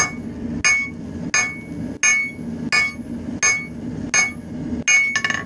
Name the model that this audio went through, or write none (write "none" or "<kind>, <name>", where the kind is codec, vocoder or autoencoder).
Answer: none